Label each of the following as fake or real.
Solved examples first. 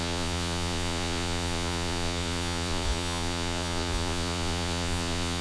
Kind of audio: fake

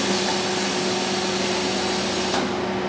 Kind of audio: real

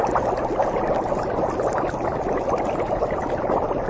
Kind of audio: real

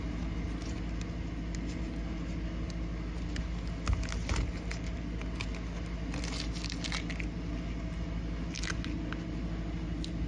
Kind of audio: real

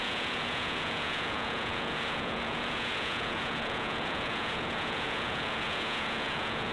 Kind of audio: fake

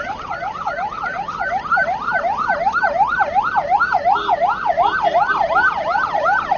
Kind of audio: real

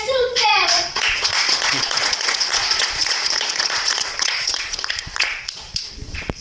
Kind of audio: fake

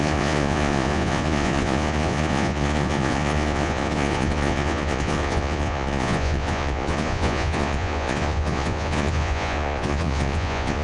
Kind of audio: fake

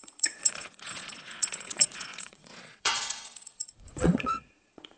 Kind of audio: fake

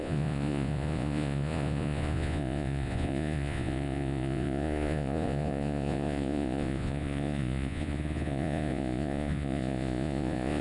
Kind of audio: fake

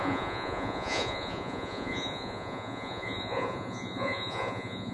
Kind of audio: fake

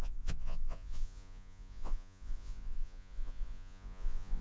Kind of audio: fake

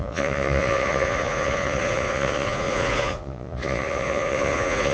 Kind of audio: fake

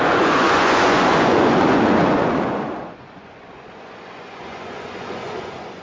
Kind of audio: fake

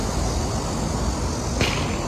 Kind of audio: real